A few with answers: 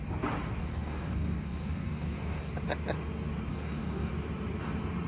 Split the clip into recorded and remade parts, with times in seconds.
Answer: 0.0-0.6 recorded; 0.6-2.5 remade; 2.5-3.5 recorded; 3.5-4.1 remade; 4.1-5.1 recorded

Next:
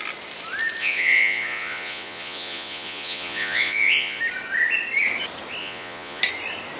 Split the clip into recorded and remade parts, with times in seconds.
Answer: 0.0-0.8 recorded; 0.8-4.2 remade; 4.2-5.6 recorded; 5.6-6.2 remade; 6.2-6.8 recorded